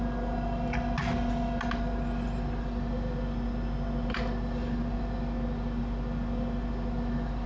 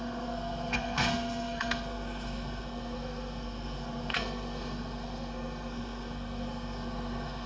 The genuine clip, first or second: first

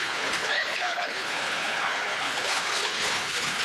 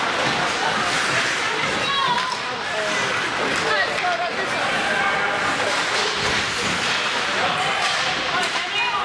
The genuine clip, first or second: second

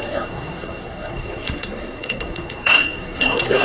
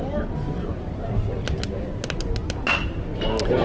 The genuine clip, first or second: second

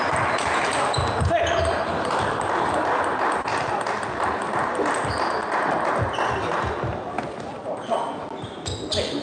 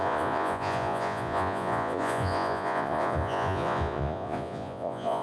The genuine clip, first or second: first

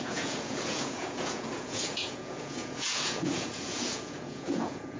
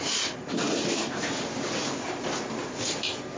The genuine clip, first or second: second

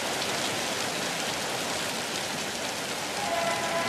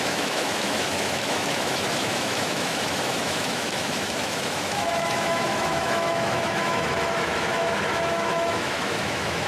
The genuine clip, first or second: first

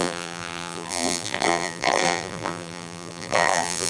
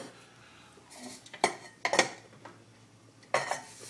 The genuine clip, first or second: second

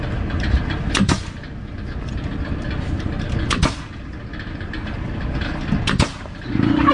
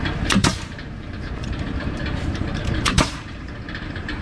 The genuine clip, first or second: first